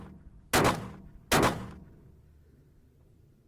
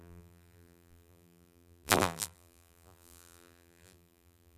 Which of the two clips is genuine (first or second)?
first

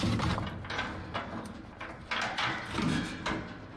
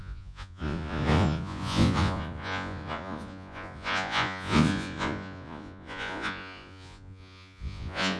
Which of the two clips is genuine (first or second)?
first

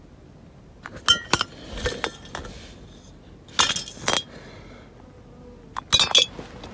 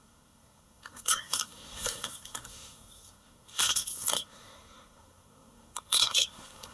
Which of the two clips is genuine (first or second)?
first